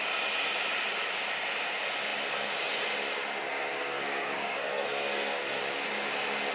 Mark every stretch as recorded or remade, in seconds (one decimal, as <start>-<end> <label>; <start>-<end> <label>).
0.0-3.5 recorded; 3.5-5.6 remade; 5.6-6.5 recorded